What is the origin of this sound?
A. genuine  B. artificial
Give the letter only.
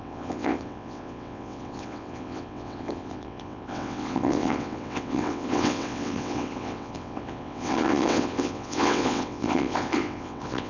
B